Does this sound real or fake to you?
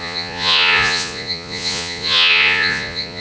fake